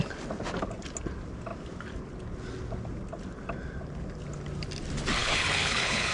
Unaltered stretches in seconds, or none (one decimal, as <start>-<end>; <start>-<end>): 0.0-5.2